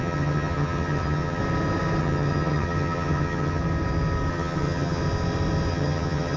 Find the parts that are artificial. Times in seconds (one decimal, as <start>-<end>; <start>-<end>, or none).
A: 0.0-1.4; 2.0-3.6; 4.3-5.0; 5.7-6.4